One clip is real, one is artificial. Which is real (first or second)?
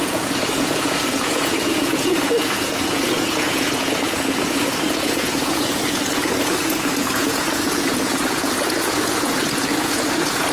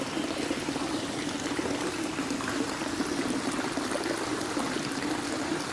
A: second